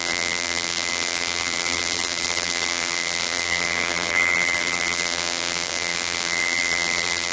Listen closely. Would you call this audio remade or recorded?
remade